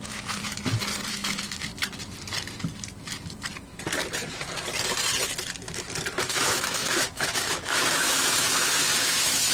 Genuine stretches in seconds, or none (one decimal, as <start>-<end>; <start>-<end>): 0.4-1.1; 1.7-6.2